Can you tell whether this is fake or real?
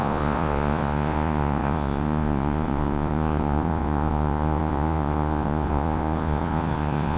fake